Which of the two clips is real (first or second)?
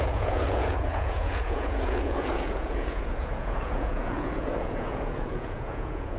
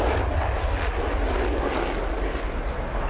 second